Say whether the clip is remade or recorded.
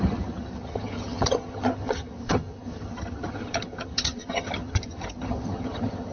remade